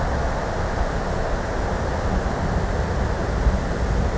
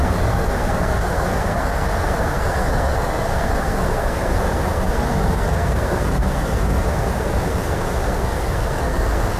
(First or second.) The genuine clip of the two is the first